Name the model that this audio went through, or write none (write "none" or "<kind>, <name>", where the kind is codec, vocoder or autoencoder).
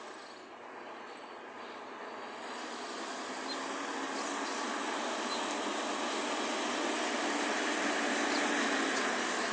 none